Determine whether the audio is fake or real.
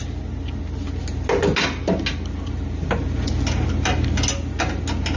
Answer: real